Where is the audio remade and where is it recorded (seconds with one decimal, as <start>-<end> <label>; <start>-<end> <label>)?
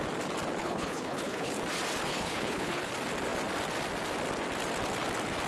0.0-0.6 recorded; 0.6-1.5 remade; 1.5-2.1 recorded; 2.1-2.9 remade; 2.9-5.5 recorded